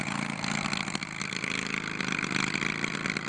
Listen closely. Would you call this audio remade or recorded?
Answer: recorded